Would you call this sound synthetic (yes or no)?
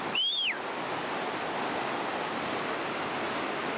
no